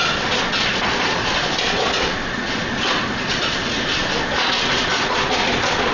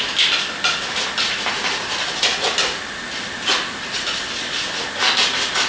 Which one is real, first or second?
second